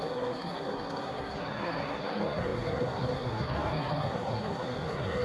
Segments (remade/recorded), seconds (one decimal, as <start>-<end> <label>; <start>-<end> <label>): 0.0-5.2 remade